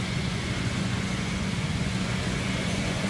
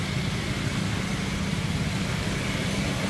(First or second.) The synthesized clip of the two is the first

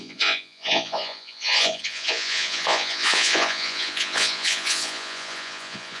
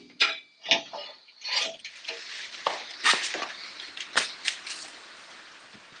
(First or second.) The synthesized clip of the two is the first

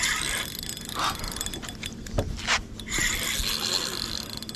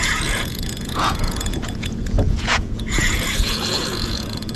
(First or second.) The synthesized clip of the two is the second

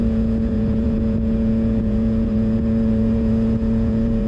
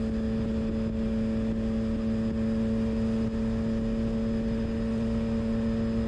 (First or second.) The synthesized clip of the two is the first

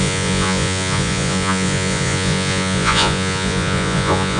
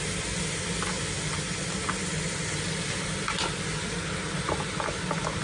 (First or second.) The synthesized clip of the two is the first